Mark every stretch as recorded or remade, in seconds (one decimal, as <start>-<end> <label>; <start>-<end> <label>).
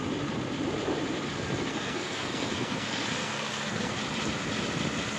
0.0-1.7 recorded; 1.7-4.0 remade; 4.0-5.2 recorded